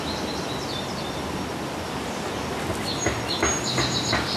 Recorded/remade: recorded